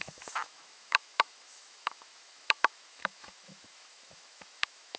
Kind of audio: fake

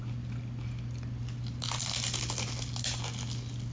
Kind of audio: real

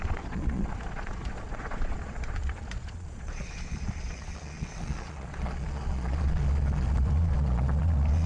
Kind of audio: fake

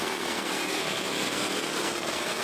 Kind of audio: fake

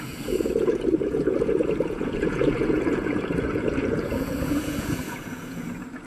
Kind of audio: fake